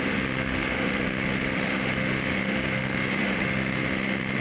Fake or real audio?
fake